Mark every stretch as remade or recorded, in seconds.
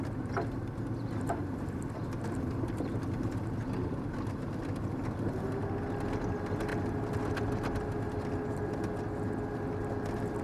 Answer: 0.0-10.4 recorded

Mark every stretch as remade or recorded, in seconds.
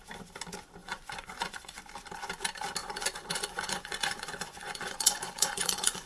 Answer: 0.0-0.8 recorded; 0.8-1.8 remade; 1.8-2.8 recorded; 2.8-6.1 remade